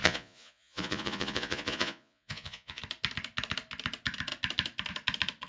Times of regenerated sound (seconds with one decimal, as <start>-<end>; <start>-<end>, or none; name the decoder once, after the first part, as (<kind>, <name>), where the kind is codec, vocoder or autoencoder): 0.0-2.8 (vocoder, Vocos)